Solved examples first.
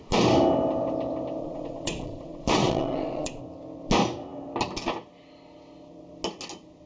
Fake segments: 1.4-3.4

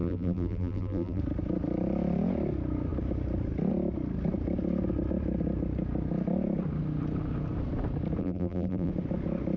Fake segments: 0.0-1.2; 8.2-8.9

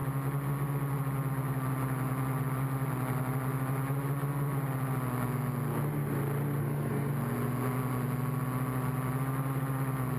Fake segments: 6.6-7.1